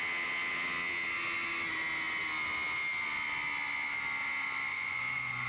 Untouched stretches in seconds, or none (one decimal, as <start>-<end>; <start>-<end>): 0.0-4.7